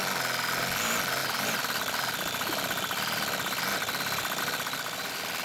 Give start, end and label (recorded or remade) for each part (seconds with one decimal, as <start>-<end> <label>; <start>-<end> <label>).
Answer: 0.0-1.2 recorded; 1.2-4.4 remade; 4.4-5.4 recorded